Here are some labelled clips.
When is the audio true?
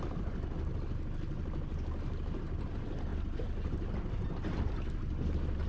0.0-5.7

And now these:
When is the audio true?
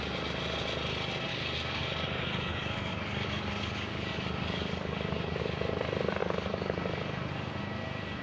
0.0-1.3; 5.4-6.2; 7.3-8.2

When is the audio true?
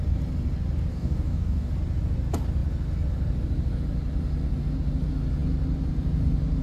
0.0-0.9; 1.7-6.6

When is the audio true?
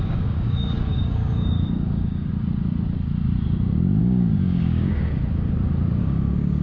2.3-4.0; 5.2-6.0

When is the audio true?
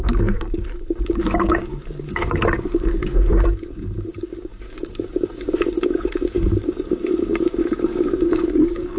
none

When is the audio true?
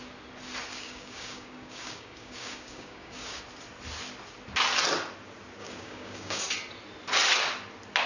0.0-0.7; 3.4-5.6; 6.4-8.1